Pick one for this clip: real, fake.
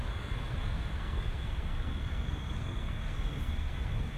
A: fake